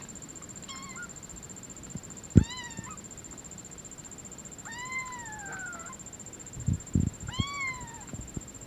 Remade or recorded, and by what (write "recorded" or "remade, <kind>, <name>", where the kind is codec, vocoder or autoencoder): recorded